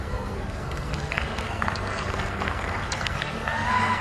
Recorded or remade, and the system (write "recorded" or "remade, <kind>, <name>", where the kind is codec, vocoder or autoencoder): remade, codec, SNAC